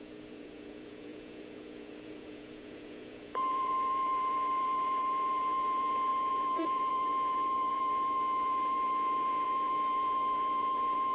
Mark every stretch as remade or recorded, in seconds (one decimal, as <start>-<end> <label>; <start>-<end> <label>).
0.0-11.1 remade